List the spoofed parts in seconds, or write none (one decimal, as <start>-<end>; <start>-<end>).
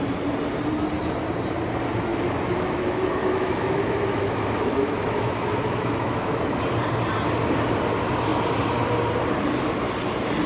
2.1-6.6